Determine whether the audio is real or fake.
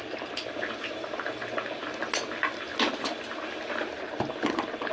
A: real